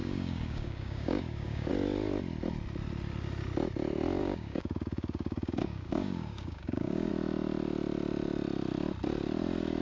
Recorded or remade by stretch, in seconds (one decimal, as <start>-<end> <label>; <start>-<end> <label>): 0.0-1.7 remade; 1.7-4.2 recorded; 4.2-7.1 remade; 7.1-9.8 recorded